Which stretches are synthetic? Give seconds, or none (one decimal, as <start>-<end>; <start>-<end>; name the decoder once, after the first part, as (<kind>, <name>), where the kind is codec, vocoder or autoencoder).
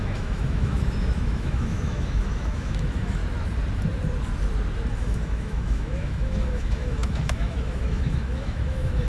0.0-3.2 (autoencoder, DAC-VAE); 5.0-9.1